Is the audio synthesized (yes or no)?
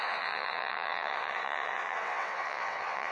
yes